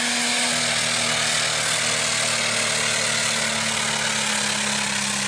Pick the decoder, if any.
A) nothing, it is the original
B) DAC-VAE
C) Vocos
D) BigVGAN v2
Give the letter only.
A